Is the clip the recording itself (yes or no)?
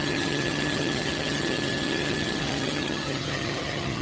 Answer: no